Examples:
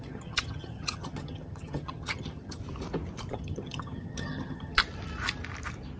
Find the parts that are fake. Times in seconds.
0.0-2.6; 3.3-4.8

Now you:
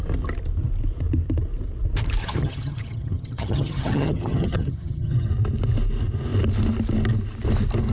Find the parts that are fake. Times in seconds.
2.2-5.3

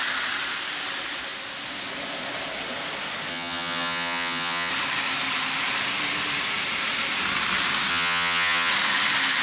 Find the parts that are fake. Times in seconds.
3.3-4.7; 7.9-8.7